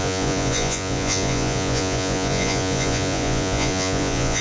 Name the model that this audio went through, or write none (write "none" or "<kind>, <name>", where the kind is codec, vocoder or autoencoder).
vocoder, Vocos